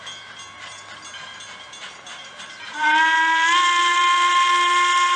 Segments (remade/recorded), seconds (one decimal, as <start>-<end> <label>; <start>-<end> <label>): 0.0-1.3 recorded; 1.3-3.0 remade; 3.0-3.9 recorded; 3.9-4.7 remade; 4.7-5.2 recorded